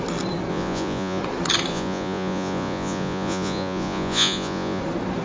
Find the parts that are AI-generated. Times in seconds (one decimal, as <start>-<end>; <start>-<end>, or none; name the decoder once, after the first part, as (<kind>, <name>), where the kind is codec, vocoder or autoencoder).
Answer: 0.5-1.2 (vocoder, Vocos); 1.7-4.8